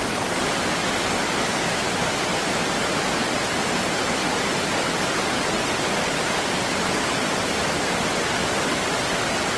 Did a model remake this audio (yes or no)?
no